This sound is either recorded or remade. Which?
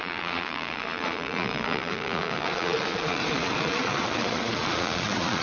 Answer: remade